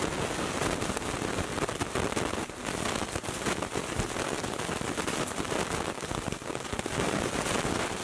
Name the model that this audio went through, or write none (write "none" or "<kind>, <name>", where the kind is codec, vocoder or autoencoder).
none